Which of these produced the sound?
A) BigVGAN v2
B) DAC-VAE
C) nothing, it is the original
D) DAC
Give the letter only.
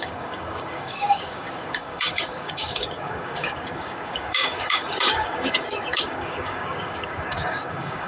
D